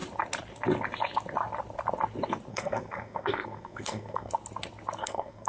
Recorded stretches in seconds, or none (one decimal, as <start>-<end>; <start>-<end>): 0.0-2.5; 4.3-5.0